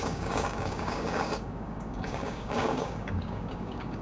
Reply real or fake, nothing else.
fake